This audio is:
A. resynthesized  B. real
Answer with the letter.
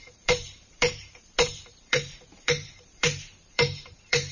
A